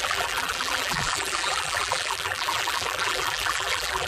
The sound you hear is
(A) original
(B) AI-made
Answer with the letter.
B